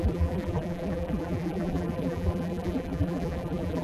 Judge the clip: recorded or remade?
remade